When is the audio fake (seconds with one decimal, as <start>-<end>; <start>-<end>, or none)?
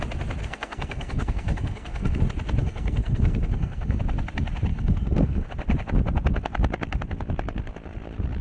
0.4-2.2; 2.6-4.0; 4.7-5.5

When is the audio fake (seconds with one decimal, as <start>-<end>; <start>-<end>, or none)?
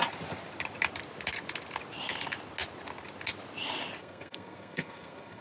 4.0-5.4